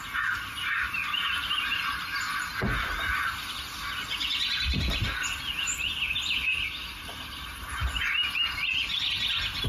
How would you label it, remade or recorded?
recorded